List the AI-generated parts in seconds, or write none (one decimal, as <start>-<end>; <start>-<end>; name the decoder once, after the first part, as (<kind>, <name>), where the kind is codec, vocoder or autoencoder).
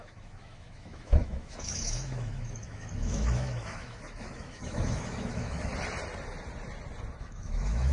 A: 0.0-5.7 (autoencoder, DAC-VAE); 7.2-7.9